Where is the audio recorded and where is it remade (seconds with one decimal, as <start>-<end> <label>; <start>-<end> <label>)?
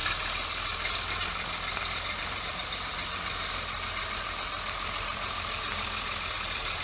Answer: 0.0-6.8 recorded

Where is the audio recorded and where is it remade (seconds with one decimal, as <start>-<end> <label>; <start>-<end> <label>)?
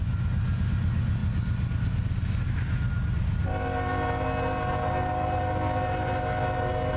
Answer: 0.0-7.0 recorded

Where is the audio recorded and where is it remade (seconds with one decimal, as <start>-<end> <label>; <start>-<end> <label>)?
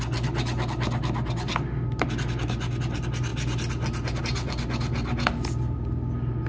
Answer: 0.0-6.5 recorded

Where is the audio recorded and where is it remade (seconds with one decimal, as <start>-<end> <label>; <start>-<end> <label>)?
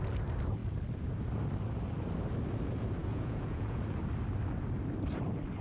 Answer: 0.0-3.0 recorded; 3.0-3.8 remade; 3.8-5.6 recorded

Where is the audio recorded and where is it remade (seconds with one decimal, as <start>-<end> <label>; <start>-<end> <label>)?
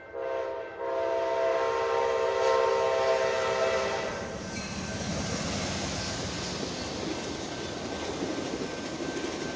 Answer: 0.0-1.5 recorded; 1.5-2.7 remade; 2.7-4.1 recorded; 4.1-6.2 remade; 6.2-9.6 recorded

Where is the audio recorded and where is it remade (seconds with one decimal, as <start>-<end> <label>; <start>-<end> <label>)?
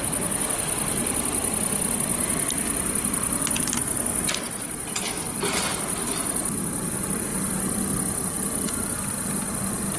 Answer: 0.0-10.0 recorded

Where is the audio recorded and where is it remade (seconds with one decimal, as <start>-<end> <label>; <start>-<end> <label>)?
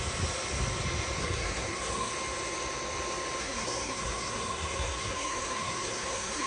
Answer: 0.0-1.2 recorded; 1.2-2.1 remade; 2.1-3.4 recorded; 3.4-6.5 remade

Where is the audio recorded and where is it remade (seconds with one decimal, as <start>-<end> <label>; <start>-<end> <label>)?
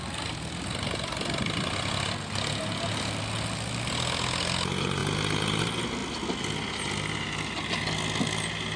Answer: 0.0-8.8 recorded